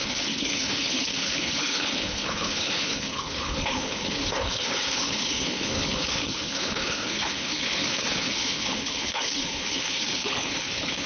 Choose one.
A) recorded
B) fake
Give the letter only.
B